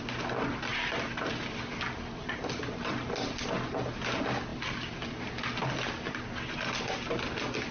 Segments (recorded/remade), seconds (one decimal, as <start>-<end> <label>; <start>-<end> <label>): 0.0-0.7 recorded; 0.7-1.3 remade; 1.3-7.7 recorded